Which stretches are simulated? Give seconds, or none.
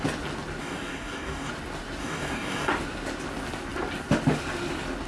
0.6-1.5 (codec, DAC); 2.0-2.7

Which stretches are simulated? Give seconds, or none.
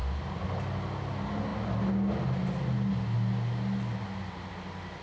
none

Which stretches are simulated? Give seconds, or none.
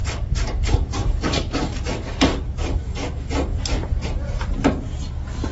0.0-3.3 (codec, DAC)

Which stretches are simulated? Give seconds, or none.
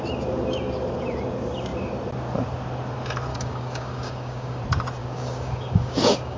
3.3-4.6 (codec, DAC); 5.0-6.4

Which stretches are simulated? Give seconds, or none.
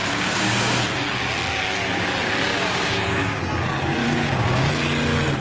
0.0-0.7 (codec, DAC); 2.5-3.4; 4.0-4.7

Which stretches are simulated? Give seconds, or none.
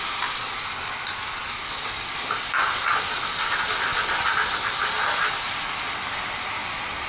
none